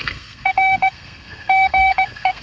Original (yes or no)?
no